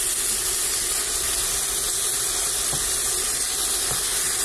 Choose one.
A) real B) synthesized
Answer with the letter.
A